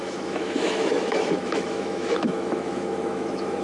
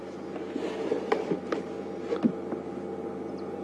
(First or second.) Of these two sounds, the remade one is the first